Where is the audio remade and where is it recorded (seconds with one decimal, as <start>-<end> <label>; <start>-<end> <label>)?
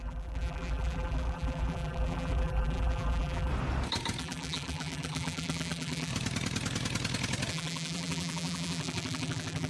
0.0-3.5 remade; 3.5-4.2 recorded; 4.2-6.1 remade; 6.1-7.5 recorded; 7.5-9.7 remade